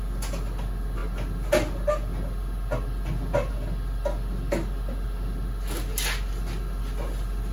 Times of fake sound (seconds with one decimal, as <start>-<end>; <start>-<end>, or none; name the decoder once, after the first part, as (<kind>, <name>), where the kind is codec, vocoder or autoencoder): none